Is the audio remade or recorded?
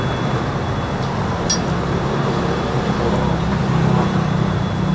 recorded